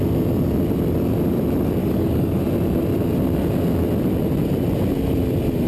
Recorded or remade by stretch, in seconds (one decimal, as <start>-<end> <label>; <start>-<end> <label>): 0.0-1.8 recorded; 1.8-2.4 remade; 2.4-5.7 recorded